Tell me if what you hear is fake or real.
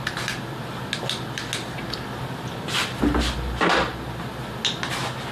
real